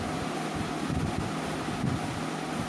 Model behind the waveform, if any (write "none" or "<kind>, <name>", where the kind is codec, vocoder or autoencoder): none